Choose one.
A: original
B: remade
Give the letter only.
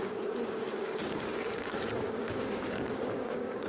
B